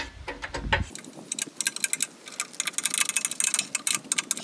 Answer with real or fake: real